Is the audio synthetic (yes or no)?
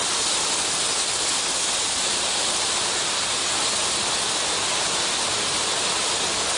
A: no